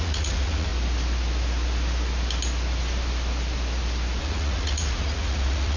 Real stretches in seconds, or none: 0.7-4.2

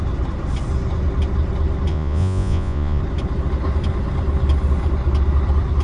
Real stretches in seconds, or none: 0.0-1.9; 3.0-5.8

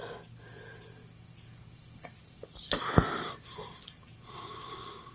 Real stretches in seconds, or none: 0.0-5.1

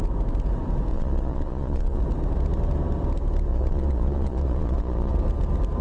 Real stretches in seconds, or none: 0.0-0.9; 2.0-3.5; 5.1-5.8

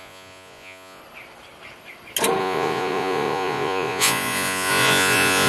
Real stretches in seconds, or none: 1.0-2.4

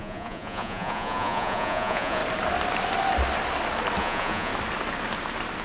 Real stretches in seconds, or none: 2.2-4.0; 4.5-5.6